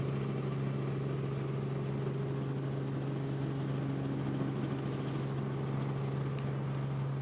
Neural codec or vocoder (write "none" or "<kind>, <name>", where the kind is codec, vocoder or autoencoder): none